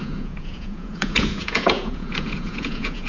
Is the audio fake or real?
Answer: fake